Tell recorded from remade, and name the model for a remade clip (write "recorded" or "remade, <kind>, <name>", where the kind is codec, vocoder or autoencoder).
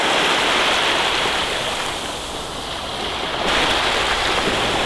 recorded